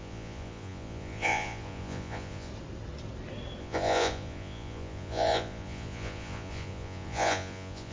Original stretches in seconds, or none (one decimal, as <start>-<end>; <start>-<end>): 2.5-3.6